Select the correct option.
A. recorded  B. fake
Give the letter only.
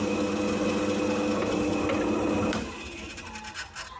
A